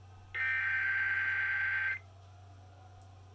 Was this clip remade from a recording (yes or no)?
no